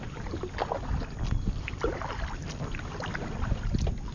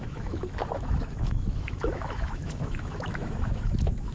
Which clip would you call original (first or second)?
first